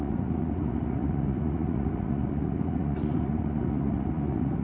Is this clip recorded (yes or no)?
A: no